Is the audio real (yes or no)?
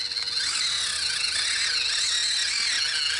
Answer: yes